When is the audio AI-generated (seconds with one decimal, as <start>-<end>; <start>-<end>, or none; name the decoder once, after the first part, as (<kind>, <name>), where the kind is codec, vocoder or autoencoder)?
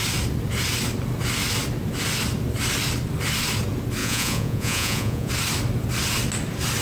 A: 4.0-5.3 (vocoder, Vocos)